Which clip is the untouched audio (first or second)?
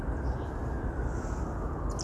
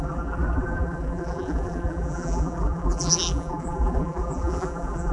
first